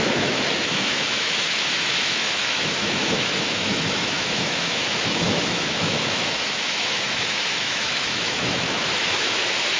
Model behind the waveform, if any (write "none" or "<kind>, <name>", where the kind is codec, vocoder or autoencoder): autoencoder, DAC-VAE